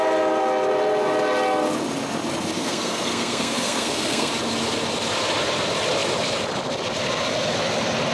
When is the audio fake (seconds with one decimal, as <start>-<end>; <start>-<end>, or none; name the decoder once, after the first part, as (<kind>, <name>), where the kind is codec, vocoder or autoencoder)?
2.6-4.3 (codec, SNAC)